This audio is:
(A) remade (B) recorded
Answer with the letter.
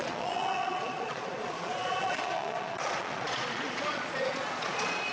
A